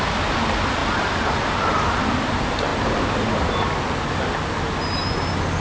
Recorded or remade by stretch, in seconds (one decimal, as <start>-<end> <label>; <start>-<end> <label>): 0.0-0.8 recorded; 0.8-2.1 remade; 2.1-5.6 recorded

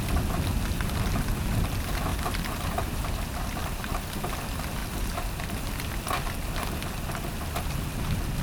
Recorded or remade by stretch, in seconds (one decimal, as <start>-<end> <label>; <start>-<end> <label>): 0.0-2.1 recorded; 2.1-3.0 remade; 3.0-3.6 recorded; 3.6-4.3 remade; 4.3-4.8 recorded; 4.8-5.7 remade; 5.7-8.4 recorded

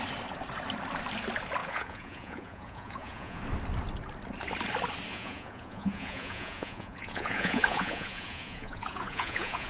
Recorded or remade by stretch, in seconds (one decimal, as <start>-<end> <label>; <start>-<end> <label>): 0.0-1.6 recorded; 1.6-3.4 remade; 3.4-5.1 recorded; 5.1-9.7 remade